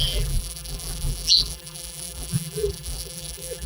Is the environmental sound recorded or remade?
remade